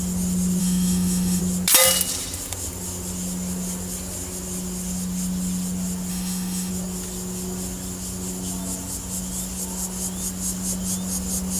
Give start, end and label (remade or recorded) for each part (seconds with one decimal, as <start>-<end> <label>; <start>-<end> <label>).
0.0-0.6 recorded; 0.6-1.4 remade; 1.4-6.1 recorded; 6.1-6.7 remade; 6.7-11.6 recorded